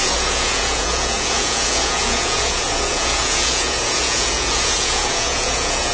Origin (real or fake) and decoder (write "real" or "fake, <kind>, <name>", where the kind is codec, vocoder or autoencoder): fake, vocoder, Vocos